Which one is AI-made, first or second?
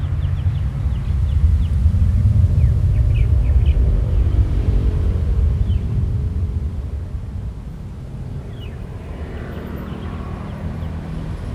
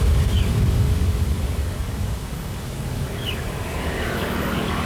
second